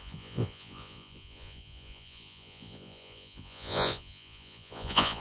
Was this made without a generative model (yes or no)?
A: no